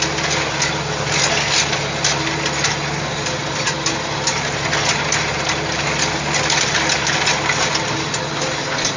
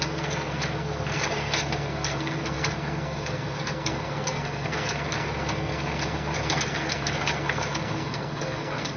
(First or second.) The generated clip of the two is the second